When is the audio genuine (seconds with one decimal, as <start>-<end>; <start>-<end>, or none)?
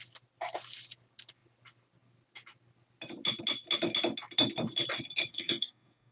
0.0-5.3